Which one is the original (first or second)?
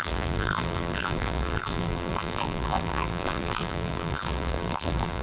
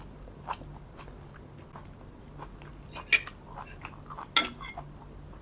second